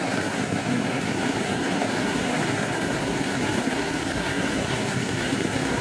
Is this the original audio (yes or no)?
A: no